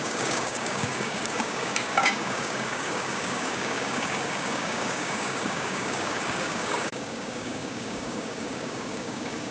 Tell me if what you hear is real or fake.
fake